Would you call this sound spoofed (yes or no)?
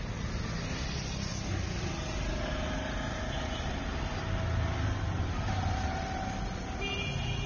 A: no